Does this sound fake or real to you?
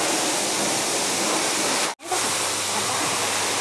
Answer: real